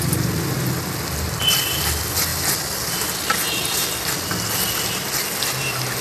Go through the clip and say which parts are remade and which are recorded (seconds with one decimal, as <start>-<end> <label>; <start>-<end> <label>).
0.0-6.0 recorded